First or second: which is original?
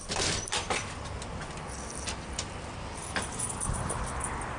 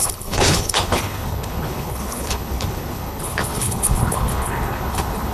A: first